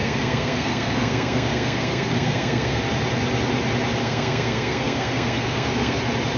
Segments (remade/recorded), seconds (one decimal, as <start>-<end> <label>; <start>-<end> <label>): 0.0-2.8 remade; 2.8-4.0 recorded; 4.0-6.0 remade; 6.0-6.4 recorded